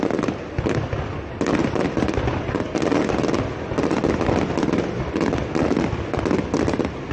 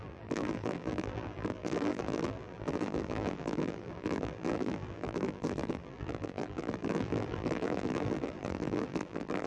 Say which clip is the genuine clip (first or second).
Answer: first